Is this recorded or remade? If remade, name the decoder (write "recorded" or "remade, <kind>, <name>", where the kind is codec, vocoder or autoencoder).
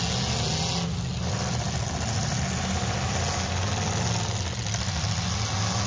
recorded